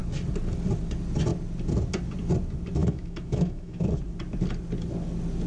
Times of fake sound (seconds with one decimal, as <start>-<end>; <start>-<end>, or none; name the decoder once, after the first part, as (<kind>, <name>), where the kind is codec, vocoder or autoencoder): 2.8-3.8 (autoencoder, DAC-VAE)